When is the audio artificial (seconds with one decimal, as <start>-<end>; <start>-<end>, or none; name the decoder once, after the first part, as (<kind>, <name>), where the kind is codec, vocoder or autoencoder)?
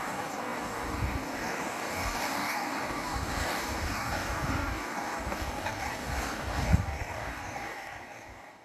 0.0-8.6 (codec, DAC)